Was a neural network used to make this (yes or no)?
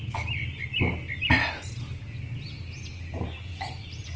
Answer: no